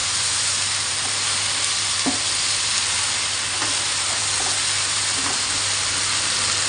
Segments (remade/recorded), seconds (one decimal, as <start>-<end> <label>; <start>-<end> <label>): 0.0-0.6 remade; 0.6-6.7 recorded